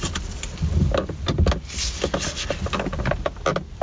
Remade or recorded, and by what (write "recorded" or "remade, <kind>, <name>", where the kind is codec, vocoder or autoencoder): recorded